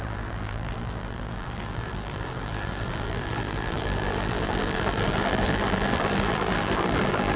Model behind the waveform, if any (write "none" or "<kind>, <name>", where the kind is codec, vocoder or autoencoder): vocoder, BigVGAN v2